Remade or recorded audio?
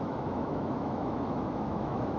remade